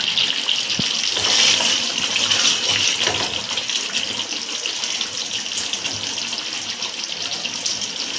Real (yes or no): yes